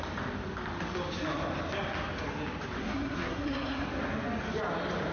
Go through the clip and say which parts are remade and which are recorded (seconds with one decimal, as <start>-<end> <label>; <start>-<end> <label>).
0.0-2.8 recorded; 2.8-3.9 remade; 3.9-5.1 recorded